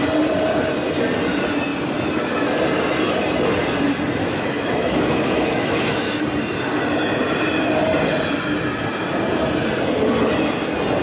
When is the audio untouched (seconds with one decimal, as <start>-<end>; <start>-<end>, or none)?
0.0-4.2; 6.2-11.0